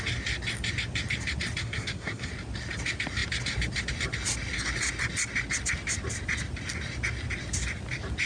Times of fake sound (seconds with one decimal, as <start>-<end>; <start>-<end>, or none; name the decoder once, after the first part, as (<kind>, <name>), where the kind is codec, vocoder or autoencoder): 1.6-2.3 (codec, SNAC)